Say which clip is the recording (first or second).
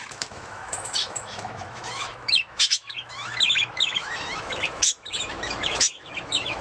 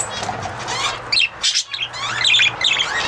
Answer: second